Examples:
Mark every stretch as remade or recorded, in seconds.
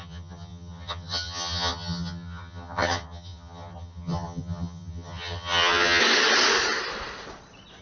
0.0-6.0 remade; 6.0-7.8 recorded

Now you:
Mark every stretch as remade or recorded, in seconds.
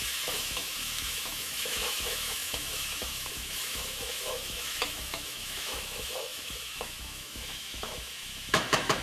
0.0-9.0 remade